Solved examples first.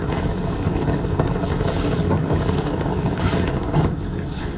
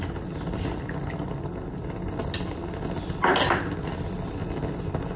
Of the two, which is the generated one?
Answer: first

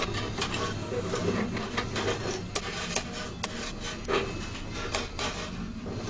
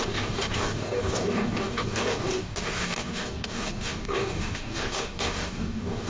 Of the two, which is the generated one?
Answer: second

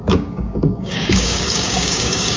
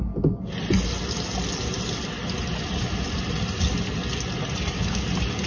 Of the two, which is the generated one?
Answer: first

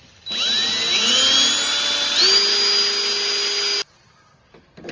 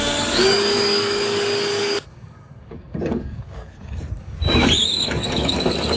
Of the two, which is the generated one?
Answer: second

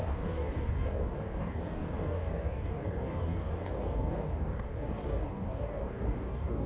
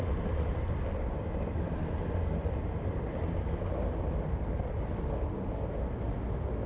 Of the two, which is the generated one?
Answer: first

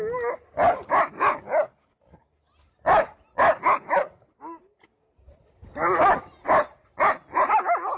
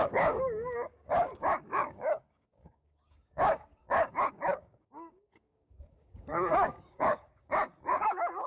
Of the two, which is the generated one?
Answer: second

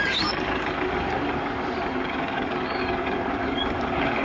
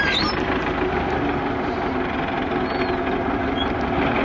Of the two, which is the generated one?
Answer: first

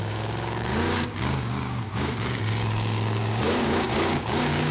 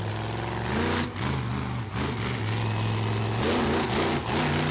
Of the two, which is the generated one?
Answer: first